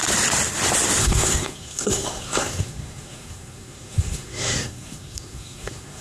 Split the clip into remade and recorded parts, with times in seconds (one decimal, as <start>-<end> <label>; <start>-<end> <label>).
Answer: 0.0-1.0 recorded; 1.0-6.0 remade